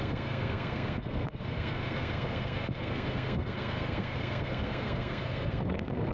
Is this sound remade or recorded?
remade